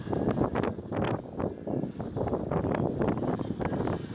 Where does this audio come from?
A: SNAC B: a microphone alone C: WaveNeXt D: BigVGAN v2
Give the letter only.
B